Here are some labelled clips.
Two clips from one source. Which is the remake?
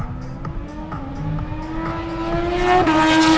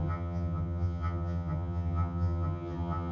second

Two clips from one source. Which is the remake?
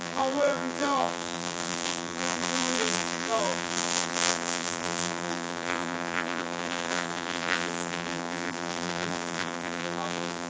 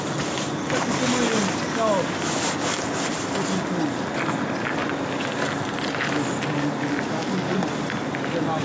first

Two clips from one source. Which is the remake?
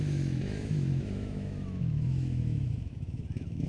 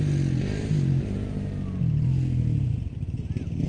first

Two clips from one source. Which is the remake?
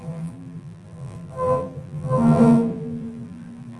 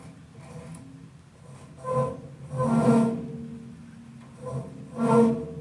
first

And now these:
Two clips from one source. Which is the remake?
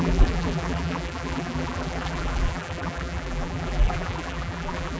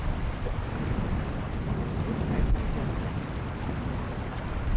first